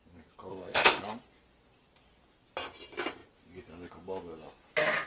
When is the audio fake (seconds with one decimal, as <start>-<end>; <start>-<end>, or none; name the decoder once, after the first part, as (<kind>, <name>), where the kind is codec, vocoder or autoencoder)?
0.5-1.0 (codec, ZipCodec)